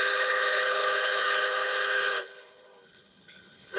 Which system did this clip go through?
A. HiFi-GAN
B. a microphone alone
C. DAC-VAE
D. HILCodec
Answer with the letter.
D